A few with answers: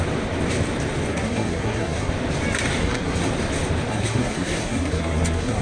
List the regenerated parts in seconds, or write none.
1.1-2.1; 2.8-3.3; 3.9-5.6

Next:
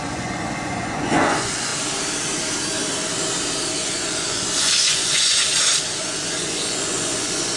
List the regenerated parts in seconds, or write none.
0.0-1.7; 3.8-5.4; 6.0-7.6

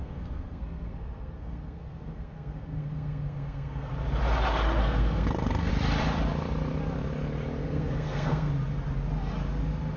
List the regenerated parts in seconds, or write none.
0.0-3.9; 4.8-5.7; 7.6-8.5